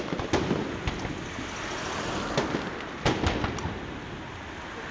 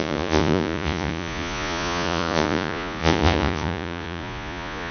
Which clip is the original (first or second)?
first